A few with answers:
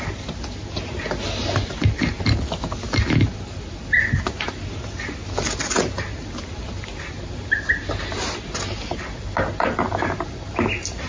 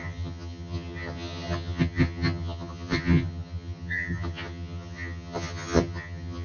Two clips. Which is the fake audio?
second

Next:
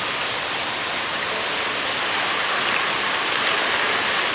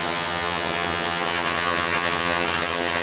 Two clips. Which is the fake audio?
second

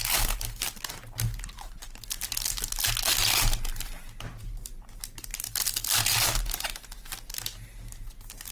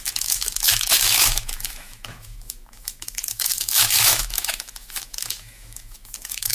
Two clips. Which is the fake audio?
second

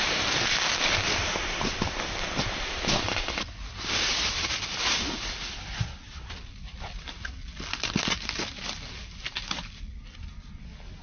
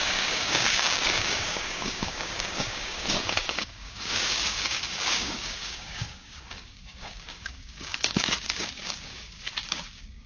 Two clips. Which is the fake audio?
second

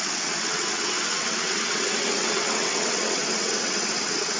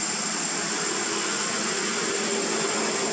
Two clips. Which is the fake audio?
first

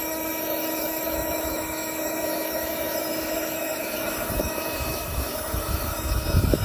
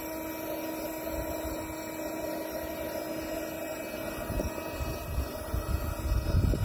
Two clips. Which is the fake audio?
first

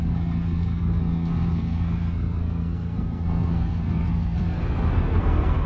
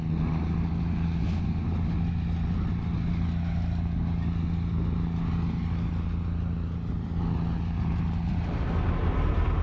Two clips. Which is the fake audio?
first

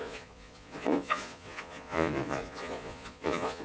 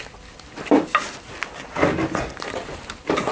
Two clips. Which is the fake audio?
first